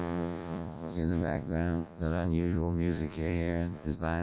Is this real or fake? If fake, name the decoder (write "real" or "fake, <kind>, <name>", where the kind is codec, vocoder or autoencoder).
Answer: fake, vocoder, Vocos